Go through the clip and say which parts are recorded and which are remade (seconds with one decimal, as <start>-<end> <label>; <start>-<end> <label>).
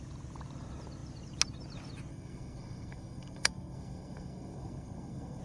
0.0-2.1 recorded; 2.1-5.4 remade